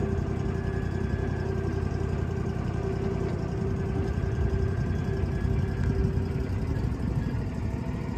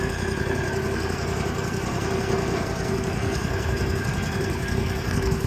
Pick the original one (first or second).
first